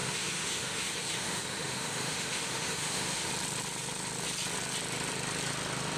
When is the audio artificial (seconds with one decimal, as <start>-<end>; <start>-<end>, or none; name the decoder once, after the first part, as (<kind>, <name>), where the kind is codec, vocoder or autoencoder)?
0.0-3.3 (autoencoder, DAC-VAE)